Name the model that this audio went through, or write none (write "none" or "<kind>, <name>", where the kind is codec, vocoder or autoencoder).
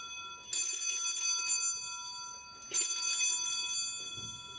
none